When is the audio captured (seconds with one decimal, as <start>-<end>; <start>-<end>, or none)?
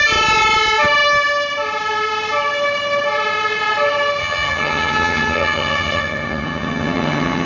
0.0-4.2